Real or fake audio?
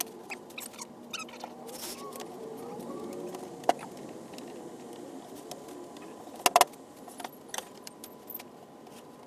real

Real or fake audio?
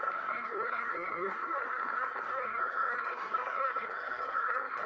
fake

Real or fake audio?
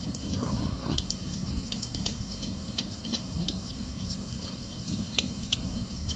fake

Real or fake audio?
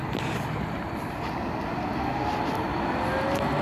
real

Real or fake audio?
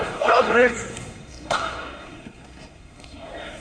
fake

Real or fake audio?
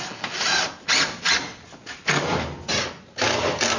real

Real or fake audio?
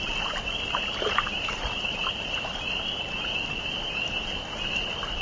real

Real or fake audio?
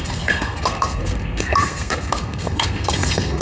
fake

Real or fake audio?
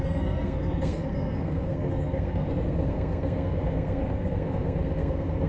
fake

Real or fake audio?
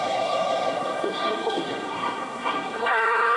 fake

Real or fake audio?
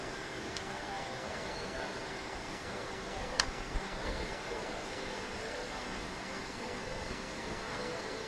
fake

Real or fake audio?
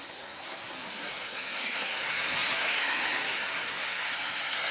fake